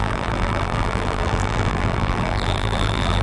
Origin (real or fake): fake